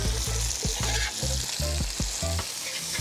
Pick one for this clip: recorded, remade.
recorded